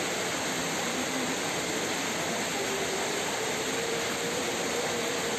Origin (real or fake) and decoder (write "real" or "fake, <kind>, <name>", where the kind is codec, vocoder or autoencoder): fake, vocoder, BigVGAN v2